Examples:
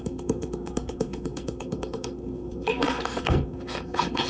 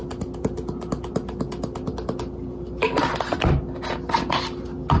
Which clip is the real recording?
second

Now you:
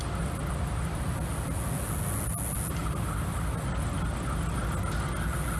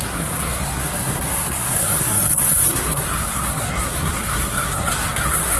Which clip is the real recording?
first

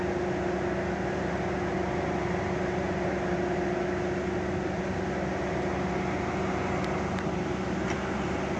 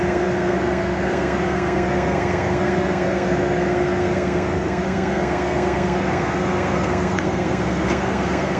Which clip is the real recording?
first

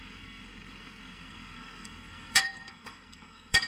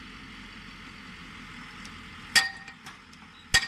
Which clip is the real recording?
second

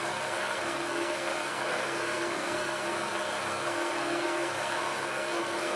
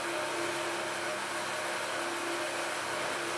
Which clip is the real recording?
second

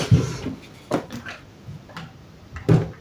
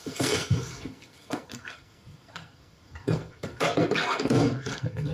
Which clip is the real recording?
first